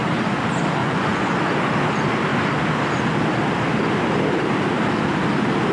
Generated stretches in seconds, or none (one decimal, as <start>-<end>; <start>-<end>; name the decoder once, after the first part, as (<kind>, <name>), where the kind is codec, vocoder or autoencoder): 0.8-1.3 (vocoder, Vocos)